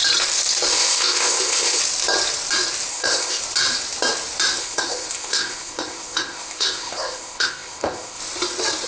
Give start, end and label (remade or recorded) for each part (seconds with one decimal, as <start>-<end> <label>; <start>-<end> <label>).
0.0-0.7 recorded; 0.7-1.8 remade; 1.8-2.9 recorded; 2.9-3.4 remade; 3.4-4.6 recorded; 4.6-8.2 remade; 8.2-8.9 recorded